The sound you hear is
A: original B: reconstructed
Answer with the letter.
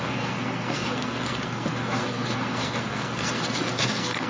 B